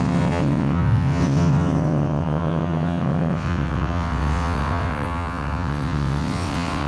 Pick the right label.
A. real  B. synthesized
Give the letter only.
B